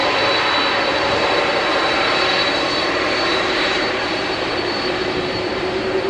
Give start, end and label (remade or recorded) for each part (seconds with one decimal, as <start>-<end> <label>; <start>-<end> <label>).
0.0-2.0 recorded; 2.0-6.1 remade